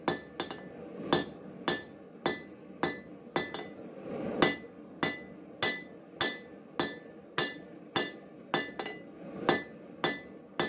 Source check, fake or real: real